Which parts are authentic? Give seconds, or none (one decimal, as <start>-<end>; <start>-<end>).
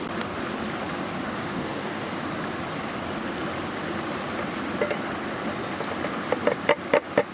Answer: 0.0-1.5; 2.1-7.3